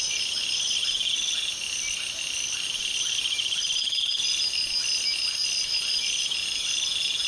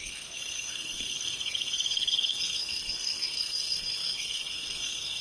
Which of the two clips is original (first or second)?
first